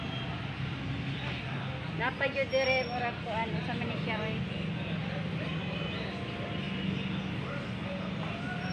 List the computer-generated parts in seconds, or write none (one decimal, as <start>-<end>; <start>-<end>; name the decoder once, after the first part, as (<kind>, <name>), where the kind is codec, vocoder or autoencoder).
none